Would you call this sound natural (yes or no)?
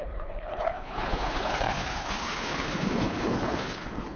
no